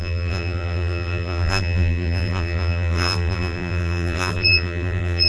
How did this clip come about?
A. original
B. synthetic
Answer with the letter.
B